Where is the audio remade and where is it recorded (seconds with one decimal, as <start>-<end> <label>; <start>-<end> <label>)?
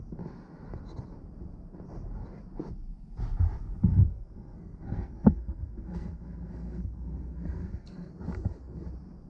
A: 0.0-3.9 recorded; 3.9-8.1 remade; 8.1-9.3 recorded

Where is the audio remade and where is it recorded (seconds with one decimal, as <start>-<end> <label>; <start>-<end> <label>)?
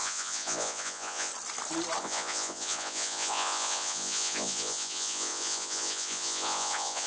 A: 0.0-1.3 remade; 1.3-2.0 recorded; 2.0-7.1 remade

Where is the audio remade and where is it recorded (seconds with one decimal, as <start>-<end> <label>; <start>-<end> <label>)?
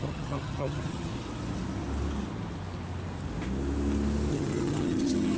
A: 0.0-1.1 remade; 1.1-4.3 recorded; 4.3-5.4 remade